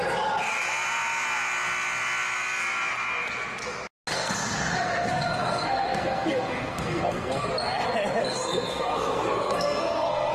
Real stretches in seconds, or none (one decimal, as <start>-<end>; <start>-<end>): 0.0-4.1; 7.5-8.2